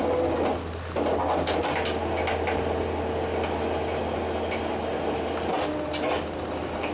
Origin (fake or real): real